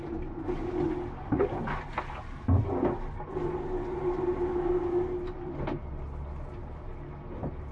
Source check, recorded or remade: recorded